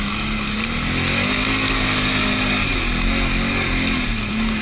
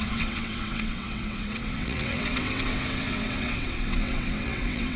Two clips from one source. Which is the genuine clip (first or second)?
first